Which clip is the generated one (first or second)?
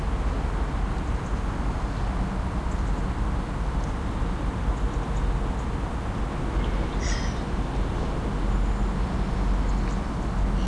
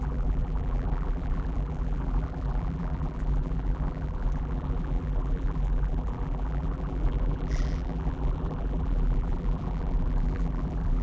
second